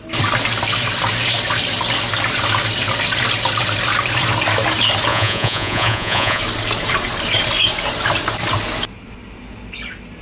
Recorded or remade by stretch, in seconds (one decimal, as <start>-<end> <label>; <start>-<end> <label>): 0.0-5.1 recorded; 5.1-6.4 remade; 6.4-10.2 recorded